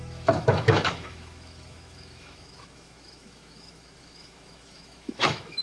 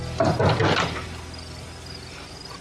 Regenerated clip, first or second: first